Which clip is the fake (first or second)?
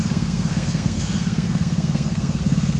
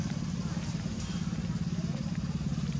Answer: first